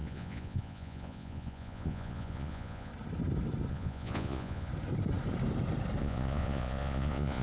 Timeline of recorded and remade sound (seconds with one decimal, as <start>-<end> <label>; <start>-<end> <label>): 0.0-2.9 remade; 2.9-3.7 recorded; 3.7-4.7 remade; 4.7-6.0 recorded; 6.0-7.4 remade